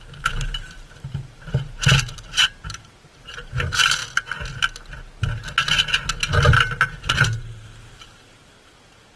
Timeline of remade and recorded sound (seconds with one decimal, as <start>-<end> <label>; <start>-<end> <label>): 0.0-4.0 remade; 4.0-7.9 recorded; 7.9-9.2 remade